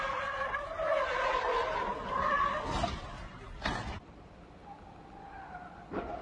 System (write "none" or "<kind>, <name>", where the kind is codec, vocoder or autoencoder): vocoder, BigVGAN v2